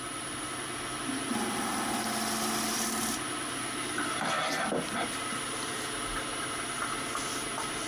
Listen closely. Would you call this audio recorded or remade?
recorded